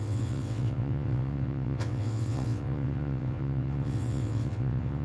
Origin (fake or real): fake